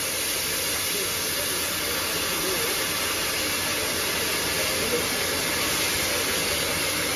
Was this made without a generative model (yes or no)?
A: yes